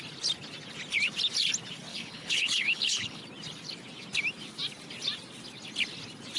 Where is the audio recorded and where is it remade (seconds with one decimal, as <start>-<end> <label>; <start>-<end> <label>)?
0.0-1.9 recorded; 1.9-3.2 remade; 3.2-6.4 recorded